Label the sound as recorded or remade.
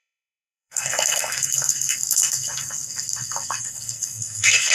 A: remade